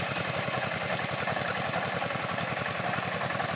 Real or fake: real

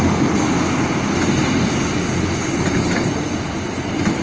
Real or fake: real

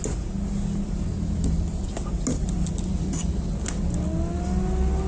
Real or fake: real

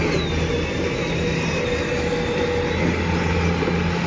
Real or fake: real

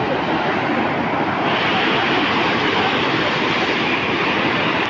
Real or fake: real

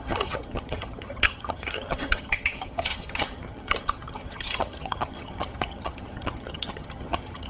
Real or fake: fake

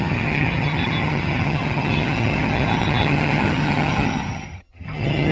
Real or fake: fake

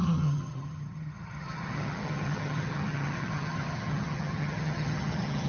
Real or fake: fake